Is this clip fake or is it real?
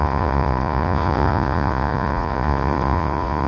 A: fake